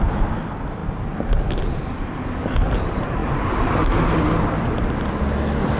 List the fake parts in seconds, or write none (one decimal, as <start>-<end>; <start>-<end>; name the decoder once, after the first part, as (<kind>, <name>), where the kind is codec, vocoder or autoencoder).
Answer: none